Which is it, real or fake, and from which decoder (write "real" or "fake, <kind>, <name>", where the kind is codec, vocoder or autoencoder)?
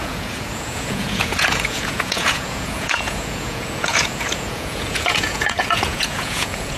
fake, vocoder, Vocos